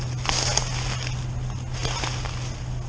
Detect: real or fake real